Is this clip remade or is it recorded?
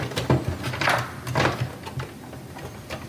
recorded